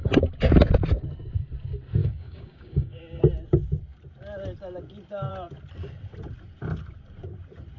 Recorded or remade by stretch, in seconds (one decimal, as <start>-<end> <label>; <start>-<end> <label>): 0.0-2.0 recorded; 2.0-3.2 remade; 3.2-7.8 recorded